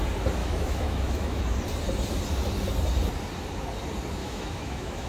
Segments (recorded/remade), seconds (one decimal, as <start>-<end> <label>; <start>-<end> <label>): 0.0-0.4 recorded; 0.4-1.4 remade; 1.4-4.2 recorded; 4.2-5.1 remade